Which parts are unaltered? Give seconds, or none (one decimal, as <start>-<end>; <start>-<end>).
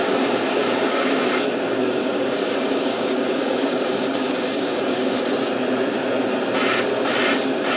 0.0-0.6; 5.3-7.8